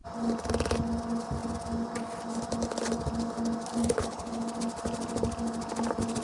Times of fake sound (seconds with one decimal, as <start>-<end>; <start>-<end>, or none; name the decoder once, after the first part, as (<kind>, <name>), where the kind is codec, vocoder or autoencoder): 3.8-4.5 (codec, HILCodec)